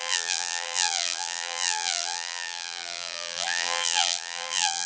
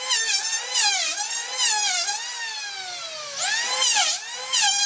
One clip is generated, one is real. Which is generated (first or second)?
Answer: first